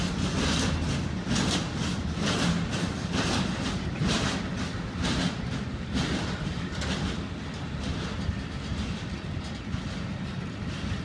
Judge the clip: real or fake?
real